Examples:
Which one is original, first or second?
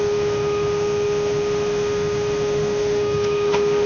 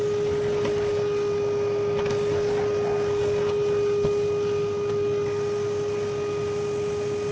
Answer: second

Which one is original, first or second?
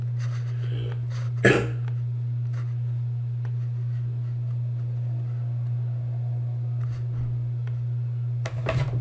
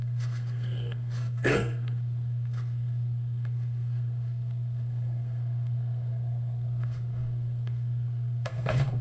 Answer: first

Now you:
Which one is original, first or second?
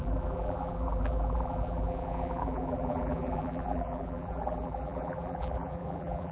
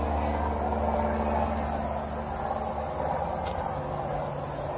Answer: second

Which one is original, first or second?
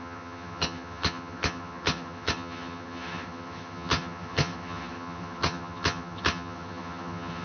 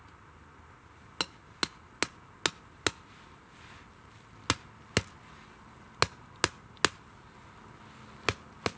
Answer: second